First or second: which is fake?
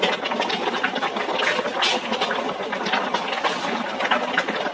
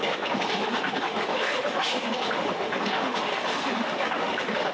second